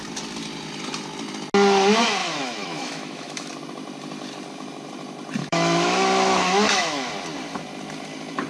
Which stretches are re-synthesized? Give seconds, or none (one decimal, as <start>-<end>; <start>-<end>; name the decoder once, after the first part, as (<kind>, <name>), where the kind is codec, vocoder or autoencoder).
2.2-3.5 (autoencoder, DAC-VAE); 5.4-7.1